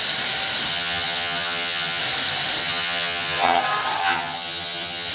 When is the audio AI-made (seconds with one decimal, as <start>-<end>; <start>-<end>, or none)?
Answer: 0.7-2.0; 2.6-3.6; 4.0-5.1